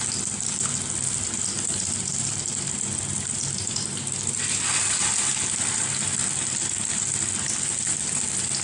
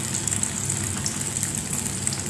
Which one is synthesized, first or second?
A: first